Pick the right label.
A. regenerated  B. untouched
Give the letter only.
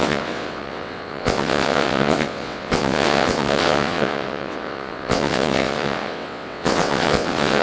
A